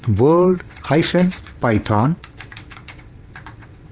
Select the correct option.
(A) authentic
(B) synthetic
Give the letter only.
B